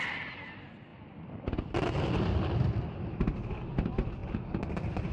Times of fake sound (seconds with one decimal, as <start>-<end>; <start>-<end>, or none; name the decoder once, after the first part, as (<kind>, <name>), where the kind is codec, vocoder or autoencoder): none